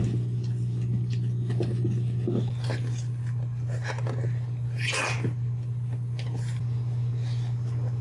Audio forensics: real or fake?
real